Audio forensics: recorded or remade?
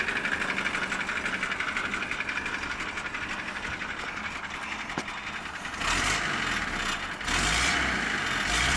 recorded